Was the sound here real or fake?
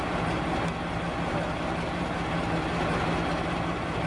real